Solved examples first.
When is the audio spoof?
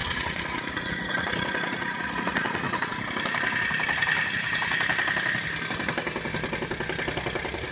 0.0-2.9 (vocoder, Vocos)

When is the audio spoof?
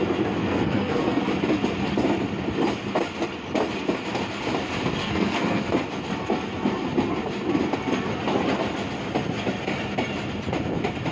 0.4-1.2 (codec, SNAC); 5.0-5.6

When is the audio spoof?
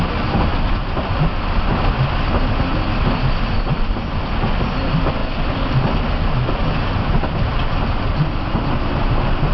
none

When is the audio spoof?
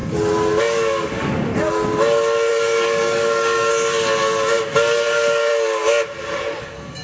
0.6-1.5 (codec, DAC); 2.5-3.7; 4.2-5.5; 6.6-7.0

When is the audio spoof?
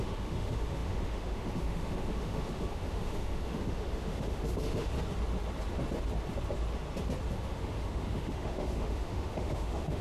0.0-4.9 (autoencoder, DAC-VAE); 7.3-10.0